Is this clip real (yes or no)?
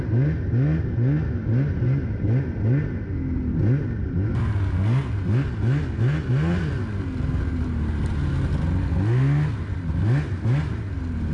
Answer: yes